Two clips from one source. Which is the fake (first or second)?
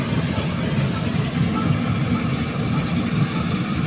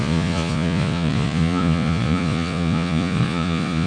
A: second